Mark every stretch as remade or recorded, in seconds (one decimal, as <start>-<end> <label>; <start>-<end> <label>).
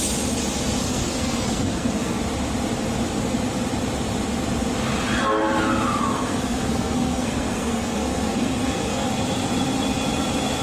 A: 0.0-0.8 recorded; 0.8-2.2 remade; 2.2-6.0 recorded; 6.0-9.1 remade; 9.1-10.6 recorded